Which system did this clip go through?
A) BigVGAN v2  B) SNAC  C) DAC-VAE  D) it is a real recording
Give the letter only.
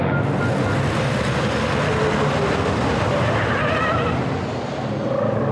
D